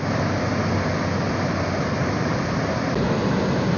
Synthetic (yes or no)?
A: no